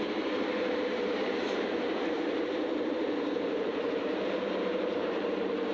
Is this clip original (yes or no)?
no